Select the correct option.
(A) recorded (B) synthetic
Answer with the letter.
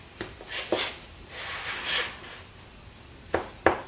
A